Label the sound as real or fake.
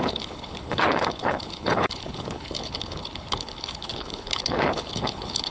fake